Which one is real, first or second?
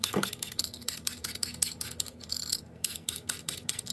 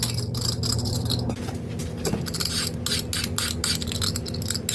second